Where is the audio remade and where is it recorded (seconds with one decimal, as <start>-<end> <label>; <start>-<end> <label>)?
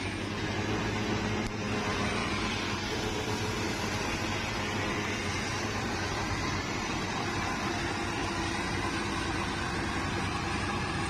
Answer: 0.0-11.1 recorded